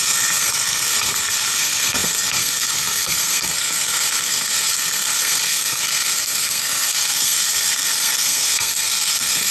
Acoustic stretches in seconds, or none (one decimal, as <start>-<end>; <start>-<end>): none